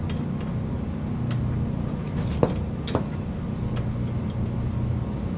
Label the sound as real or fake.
real